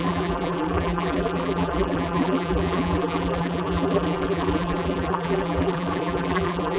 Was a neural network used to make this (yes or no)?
yes